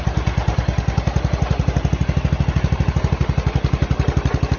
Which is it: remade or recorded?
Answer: recorded